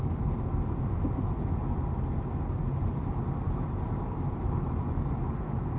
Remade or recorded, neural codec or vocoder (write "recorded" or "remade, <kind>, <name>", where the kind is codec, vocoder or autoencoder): recorded